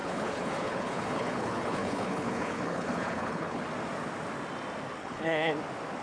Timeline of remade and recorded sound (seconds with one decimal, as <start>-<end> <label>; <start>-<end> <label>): 0.0-3.6 remade; 3.6-5.0 recorded; 5.0-5.5 remade; 5.5-6.0 recorded